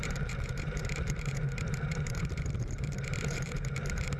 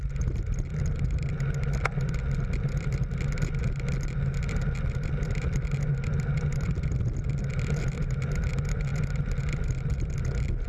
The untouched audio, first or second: second